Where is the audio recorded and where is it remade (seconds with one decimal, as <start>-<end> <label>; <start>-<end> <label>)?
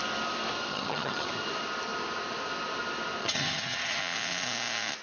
0.0-0.7 recorded; 0.7-1.3 remade; 1.3-3.2 recorded; 3.2-4.0 remade; 4.0-5.0 recorded